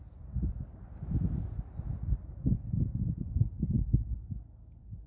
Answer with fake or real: real